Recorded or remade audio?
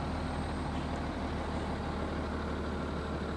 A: recorded